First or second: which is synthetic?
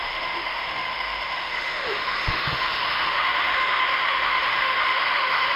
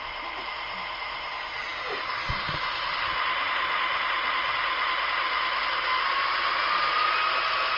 first